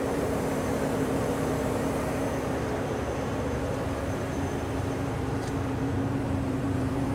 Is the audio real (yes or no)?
no